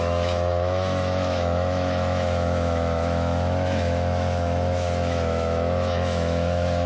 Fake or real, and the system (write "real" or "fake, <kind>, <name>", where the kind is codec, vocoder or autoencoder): fake, autoencoder, DAC-VAE